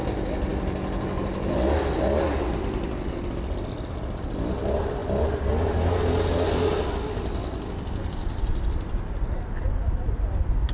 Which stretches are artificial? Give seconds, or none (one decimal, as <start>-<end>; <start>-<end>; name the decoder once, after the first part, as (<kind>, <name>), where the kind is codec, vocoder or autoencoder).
none